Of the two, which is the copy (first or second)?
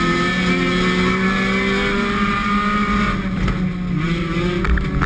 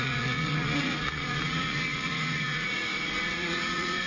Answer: second